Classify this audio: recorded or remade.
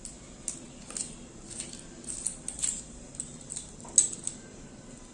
recorded